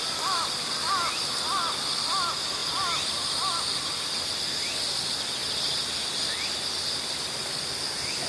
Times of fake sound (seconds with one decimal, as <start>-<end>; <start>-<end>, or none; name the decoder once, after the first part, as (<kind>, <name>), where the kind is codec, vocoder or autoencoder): 2.6-4.6 (vocoder, BigVGAN v2)